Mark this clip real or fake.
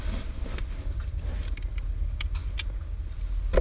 real